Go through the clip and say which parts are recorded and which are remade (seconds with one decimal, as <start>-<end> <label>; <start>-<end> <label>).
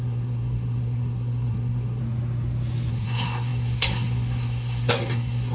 0.0-2.0 remade; 2.0-2.9 recorded; 2.9-5.5 remade